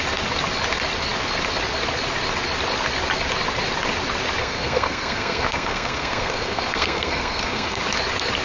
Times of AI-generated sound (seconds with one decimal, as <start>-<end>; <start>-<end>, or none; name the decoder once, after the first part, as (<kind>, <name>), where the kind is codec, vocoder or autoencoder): 4.4-7.8 (codec, SNAC)